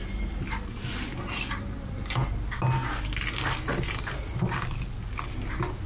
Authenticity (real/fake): real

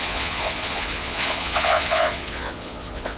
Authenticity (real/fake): fake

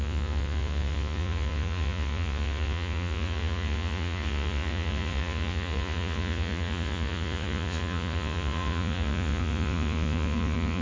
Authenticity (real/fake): fake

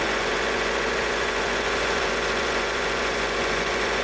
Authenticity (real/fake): fake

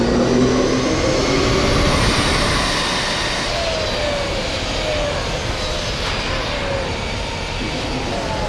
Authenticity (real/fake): real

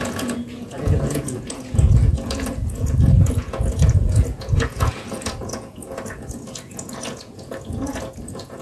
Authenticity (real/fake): fake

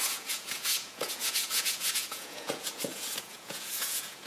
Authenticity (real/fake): fake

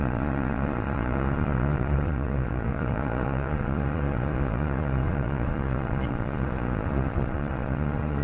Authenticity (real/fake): fake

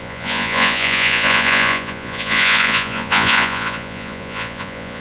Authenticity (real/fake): fake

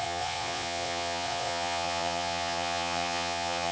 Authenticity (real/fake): fake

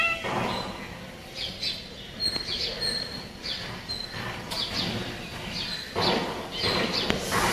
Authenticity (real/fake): real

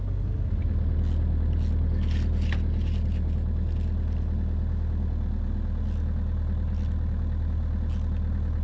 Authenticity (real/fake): real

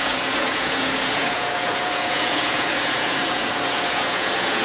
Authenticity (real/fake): fake